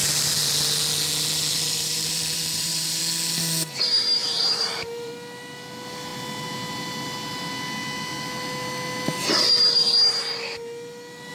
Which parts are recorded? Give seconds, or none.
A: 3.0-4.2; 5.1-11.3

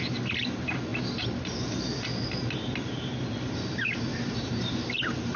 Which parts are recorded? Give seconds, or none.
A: 0.0-4.1

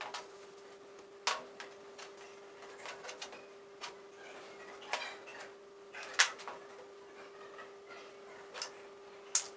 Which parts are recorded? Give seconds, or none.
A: 0.0-9.6

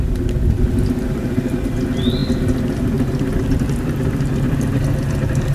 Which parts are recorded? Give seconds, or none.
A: 0.0-5.5

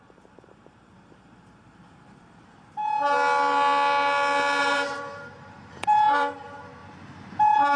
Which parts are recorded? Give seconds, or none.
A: 2.8-4.6; 6.8-7.8

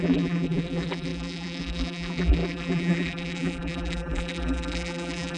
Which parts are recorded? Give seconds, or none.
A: none